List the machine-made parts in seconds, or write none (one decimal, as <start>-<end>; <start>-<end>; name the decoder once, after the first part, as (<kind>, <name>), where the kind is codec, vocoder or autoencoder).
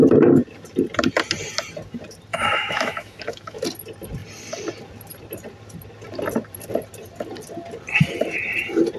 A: 2.3-3.6 (autoencoder, DAC-VAE)